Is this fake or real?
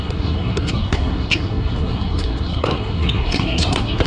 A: fake